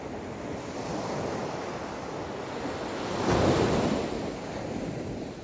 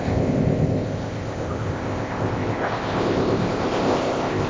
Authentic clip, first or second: first